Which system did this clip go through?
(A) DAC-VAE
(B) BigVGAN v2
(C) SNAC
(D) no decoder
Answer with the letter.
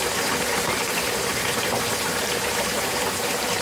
B